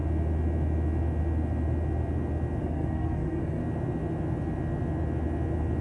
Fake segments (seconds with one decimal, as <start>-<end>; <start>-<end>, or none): 2.6-3.6